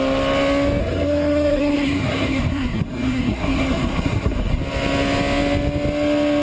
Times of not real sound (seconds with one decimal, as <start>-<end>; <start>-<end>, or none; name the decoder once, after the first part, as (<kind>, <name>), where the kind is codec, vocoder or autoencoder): 0.8-4.6 (codec, SNAC)